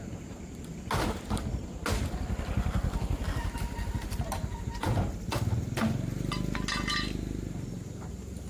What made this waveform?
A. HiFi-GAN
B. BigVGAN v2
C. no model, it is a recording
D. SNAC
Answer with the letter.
C